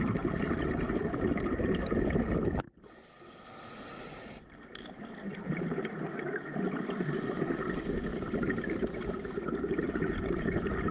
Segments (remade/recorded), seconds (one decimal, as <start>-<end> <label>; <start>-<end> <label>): 0.0-10.9 recorded